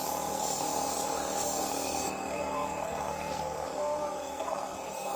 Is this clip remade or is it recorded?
remade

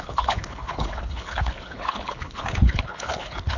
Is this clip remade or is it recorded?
remade